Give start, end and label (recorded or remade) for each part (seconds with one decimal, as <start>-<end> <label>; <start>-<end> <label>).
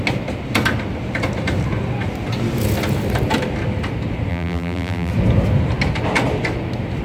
0.0-4.3 recorded; 4.3-5.1 remade; 5.1-7.0 recorded